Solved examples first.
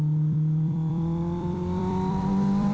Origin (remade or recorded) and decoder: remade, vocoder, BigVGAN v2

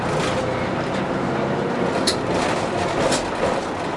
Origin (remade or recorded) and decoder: recorded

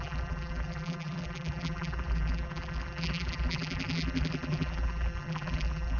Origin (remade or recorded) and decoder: remade, vocoder, BigVGAN v2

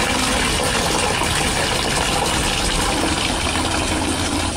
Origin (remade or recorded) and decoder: recorded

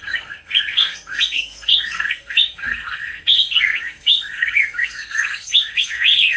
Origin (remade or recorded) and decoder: remade, codec, SNAC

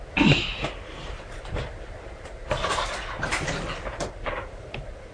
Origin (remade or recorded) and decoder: recorded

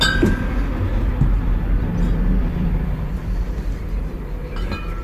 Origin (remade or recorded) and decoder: recorded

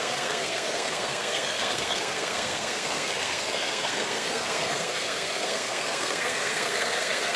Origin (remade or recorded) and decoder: remade, codec, SNAC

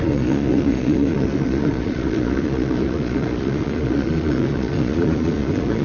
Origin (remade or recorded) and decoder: remade, vocoder, Vocos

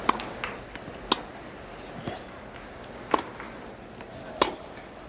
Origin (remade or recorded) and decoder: recorded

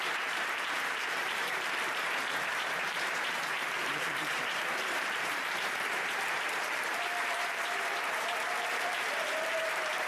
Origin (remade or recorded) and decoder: remade, vocoder, BigVGAN v2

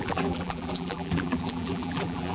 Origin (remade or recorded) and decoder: remade, vocoder, BigVGAN v2